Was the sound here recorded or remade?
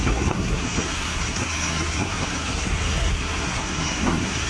remade